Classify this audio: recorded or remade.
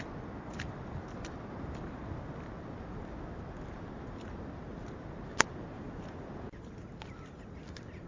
recorded